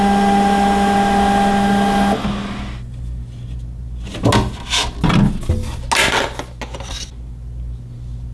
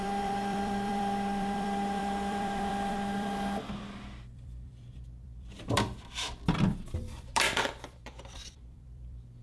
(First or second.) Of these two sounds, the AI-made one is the second